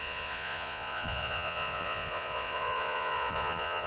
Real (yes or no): no